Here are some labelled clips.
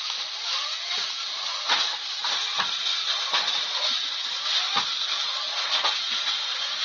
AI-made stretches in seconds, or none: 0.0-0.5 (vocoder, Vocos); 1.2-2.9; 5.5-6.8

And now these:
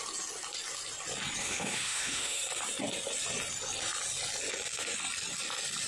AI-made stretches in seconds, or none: 1.4-2.4 (autoencoder, DAC-VAE)

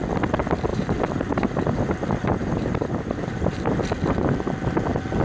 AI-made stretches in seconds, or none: 0.7-3.8 (vocoder, BigVGAN v2)

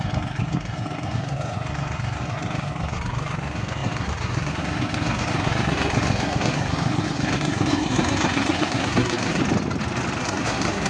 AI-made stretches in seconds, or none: 0.0-9.4 (codec, SNAC); 10.2-10.9